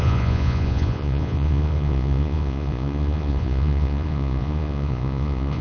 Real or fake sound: fake